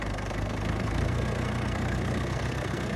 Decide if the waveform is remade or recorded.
remade